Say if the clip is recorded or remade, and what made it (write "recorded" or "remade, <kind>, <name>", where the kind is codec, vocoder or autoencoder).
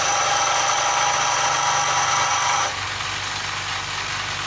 recorded